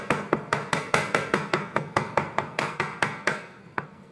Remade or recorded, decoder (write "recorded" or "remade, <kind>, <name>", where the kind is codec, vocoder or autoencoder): remade, codec, SNAC